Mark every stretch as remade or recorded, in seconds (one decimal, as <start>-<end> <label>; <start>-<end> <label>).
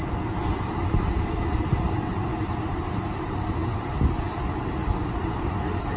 0.0-6.0 recorded